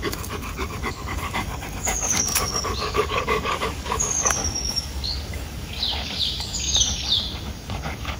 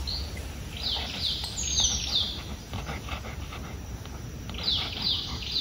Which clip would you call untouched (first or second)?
second